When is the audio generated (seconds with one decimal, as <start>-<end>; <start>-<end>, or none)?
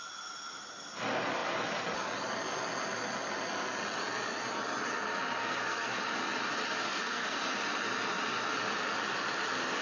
5.4-6.0; 6.8-7.4